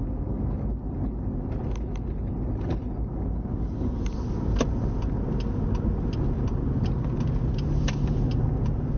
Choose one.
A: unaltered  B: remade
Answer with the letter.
A